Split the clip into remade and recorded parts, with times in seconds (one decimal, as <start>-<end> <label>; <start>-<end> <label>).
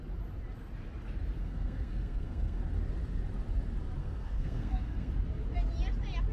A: 0.0-1.4 recorded; 1.4-2.6 remade; 2.6-4.0 recorded; 4.0-5.1 remade; 5.1-6.3 recorded